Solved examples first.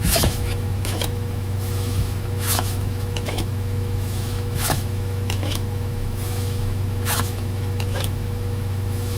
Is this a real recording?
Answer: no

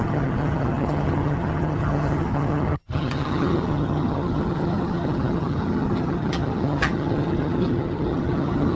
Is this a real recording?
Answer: no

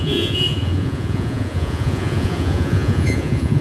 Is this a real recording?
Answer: no